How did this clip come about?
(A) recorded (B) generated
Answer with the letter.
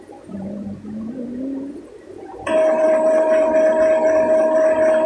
A